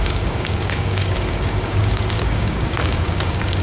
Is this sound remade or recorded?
remade